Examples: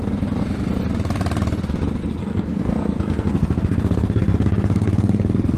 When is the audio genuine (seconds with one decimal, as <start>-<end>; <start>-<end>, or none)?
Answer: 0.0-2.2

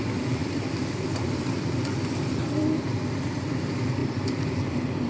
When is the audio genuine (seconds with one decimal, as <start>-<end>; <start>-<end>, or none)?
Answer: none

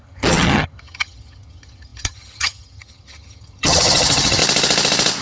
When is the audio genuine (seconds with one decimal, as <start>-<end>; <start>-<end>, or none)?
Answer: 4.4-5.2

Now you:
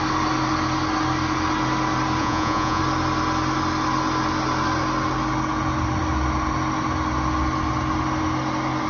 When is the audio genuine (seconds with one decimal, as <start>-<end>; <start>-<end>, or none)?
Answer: 0.0-2.2; 2.8-8.9